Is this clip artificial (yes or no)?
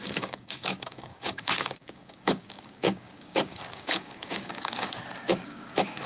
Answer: yes